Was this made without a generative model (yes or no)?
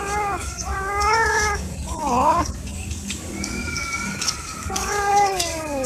no